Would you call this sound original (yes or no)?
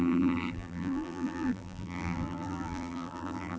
no